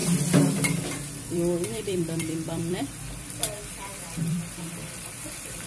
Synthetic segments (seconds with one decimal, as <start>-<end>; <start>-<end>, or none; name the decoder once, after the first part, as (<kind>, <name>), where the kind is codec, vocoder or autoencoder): 0.0-5.7 (vocoder, BigVGAN v2)